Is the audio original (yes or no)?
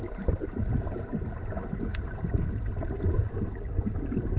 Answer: no